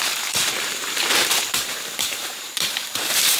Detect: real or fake fake